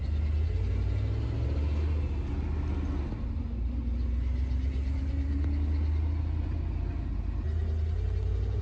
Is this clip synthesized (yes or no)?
no